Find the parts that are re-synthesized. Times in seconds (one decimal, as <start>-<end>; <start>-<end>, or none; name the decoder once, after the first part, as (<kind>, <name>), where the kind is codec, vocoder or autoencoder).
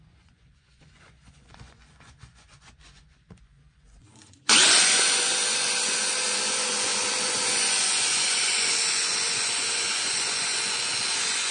0.0-11.5 (vocoder, Vocos)